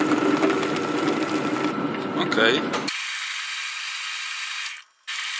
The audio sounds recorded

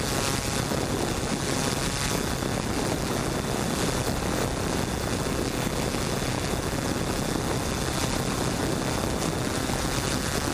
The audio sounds recorded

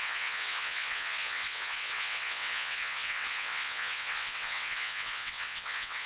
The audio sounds remade